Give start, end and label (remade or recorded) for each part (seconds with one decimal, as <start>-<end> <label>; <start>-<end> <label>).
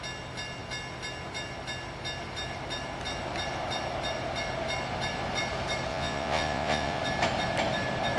0.0-5.9 recorded; 5.9-7.0 remade; 7.0-8.2 recorded